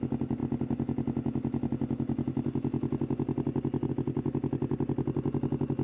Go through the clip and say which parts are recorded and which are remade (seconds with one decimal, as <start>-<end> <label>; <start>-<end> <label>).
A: 0.0-5.8 recorded

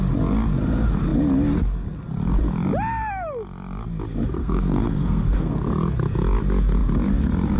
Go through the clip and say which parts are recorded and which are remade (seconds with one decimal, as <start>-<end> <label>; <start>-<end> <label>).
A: 0.0-4.4 recorded; 4.4-5.6 remade; 5.6-7.6 recorded

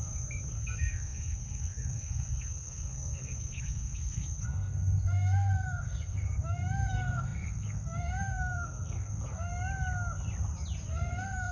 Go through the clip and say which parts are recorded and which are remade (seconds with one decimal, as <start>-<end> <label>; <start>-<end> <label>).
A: 0.0-9.5 remade; 9.5-10.9 recorded; 10.9-11.5 remade